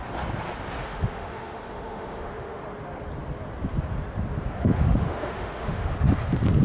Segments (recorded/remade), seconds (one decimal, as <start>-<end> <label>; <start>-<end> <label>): 0.0-0.8 recorded; 0.8-2.6 remade; 2.6-4.6 recorded; 4.6-5.9 remade; 5.9-6.6 recorded